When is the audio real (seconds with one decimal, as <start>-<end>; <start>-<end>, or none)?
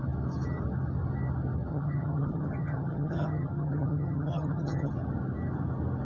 0.0-1.7; 4.9-6.0